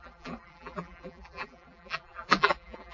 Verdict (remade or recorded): remade